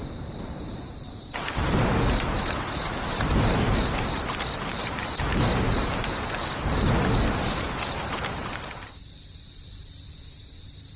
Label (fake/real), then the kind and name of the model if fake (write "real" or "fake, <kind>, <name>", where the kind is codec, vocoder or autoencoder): fake, vocoder, BigVGAN v2